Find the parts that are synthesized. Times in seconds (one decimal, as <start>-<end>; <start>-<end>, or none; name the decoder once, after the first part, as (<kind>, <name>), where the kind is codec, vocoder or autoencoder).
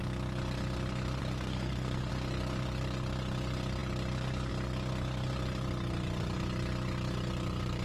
1.2-2.1 (codec, SNAC)